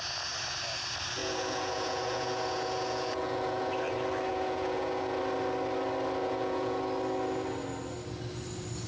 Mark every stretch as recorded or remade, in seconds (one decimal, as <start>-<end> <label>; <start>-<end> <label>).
0.0-1.2 recorded; 1.2-3.7 remade; 3.7-4.3 recorded; 4.3-5.2 remade; 5.2-6.2 recorded; 6.2-6.8 remade; 6.8-8.9 recorded

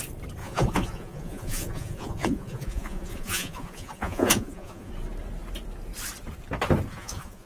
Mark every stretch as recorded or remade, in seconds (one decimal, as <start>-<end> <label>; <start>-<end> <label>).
0.0-0.4 recorded; 0.4-4.9 remade; 4.9-6.9 recorded; 6.9-7.5 remade